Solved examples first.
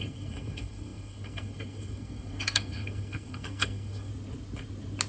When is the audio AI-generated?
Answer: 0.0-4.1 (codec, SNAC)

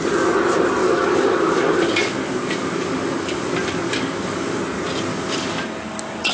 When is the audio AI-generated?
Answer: 0.8-4.6 (codec, DAC); 5.1-6.3

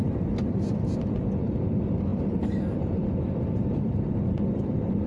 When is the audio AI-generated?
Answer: 0.7-1.6 (vocoder, BigVGAN v2); 2.1-5.1

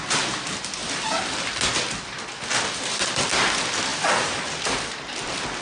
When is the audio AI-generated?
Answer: none

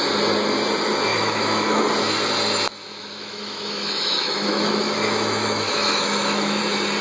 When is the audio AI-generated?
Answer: 1.1-1.8 (autoencoder, DAC-VAE); 2.8-6.6

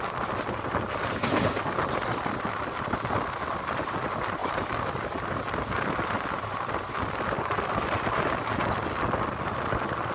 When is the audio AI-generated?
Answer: none

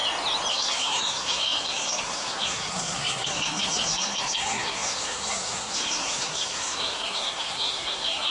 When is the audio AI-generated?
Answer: 0.5-8.3 (codec, SNAC)

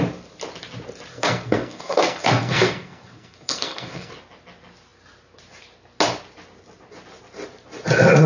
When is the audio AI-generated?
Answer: 1.1-4.1 (codec, SNAC)